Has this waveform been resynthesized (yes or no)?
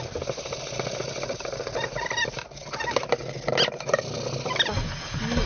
no